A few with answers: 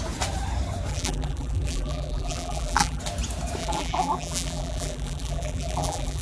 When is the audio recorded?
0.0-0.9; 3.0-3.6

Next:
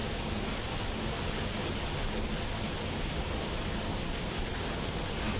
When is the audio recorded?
0.0-5.4

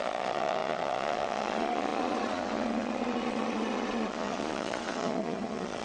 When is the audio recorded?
none

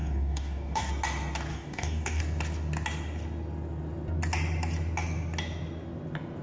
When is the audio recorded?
0.9-1.5; 2.2-6.4